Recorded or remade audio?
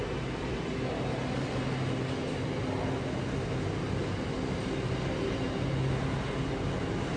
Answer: recorded